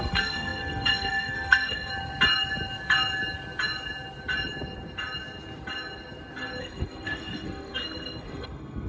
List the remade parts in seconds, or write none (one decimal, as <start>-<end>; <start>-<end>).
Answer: 0.0-1.9; 6.6-8.9